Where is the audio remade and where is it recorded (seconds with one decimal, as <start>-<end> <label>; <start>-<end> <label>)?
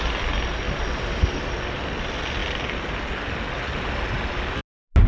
0.0-5.1 recorded